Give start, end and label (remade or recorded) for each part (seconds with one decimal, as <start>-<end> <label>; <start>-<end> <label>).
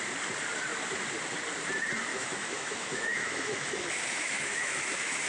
0.0-2.1 recorded; 2.1-5.3 remade